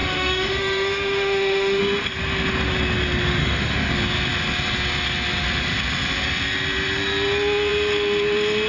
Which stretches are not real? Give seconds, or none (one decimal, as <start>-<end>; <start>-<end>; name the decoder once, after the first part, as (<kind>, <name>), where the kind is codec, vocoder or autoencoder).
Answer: 0.0-1.8 (autoencoder, DAC-VAE); 3.4-3.9

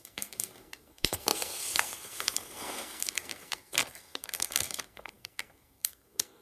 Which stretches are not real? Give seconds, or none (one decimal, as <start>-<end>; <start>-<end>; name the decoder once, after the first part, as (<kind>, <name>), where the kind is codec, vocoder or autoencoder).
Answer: 0.0-6.4 (codec, SNAC)

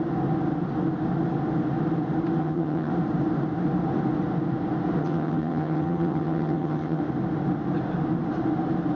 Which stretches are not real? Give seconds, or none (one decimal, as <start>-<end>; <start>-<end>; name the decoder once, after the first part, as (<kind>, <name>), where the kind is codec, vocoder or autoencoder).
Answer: 2.4-2.9 (vocoder, HiFi-GAN); 5.0-7.0

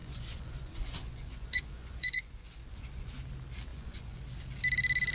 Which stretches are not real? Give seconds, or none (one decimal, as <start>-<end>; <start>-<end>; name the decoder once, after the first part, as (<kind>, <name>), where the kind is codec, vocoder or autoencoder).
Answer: 0.0-3.1 (vocoder, Vocos); 3.7-4.2